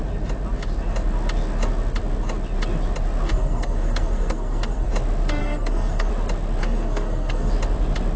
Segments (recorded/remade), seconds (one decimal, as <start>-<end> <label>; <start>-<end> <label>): 0.0-3.3 recorded; 3.3-4.9 remade; 4.9-5.4 recorded; 5.4-6.1 remade; 6.1-6.6 recorded; 6.6-7.5 remade; 7.5-8.2 recorded